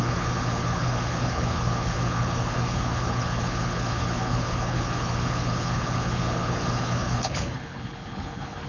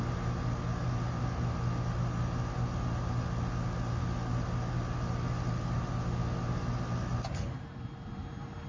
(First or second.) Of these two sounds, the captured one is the second